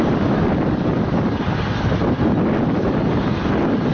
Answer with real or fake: real